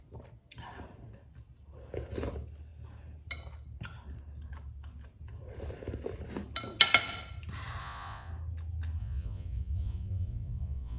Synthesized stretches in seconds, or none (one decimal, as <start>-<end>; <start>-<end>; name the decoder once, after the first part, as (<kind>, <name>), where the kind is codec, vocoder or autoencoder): 7.8-8.3 (vocoder, Vocos); 9.0-11.0